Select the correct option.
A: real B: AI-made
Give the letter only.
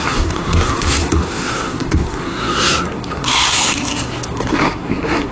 B